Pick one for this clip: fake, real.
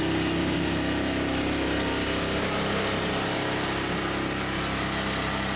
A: real